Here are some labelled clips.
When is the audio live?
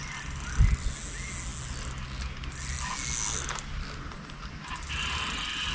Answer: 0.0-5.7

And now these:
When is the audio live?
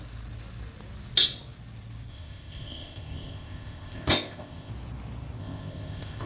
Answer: 0.0-2.1; 4.7-5.4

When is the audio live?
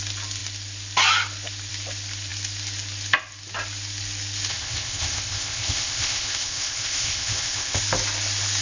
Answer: 0.0-4.5; 7.8-8.6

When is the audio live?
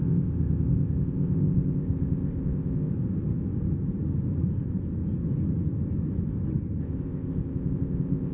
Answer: 2.9-6.8